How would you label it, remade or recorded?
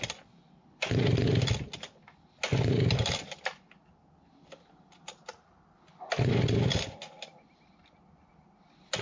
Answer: recorded